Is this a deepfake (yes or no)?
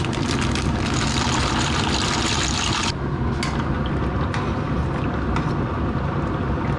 no